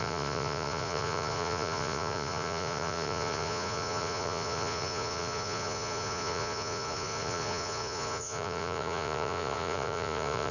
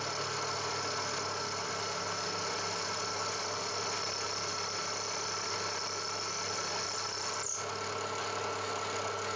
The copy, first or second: first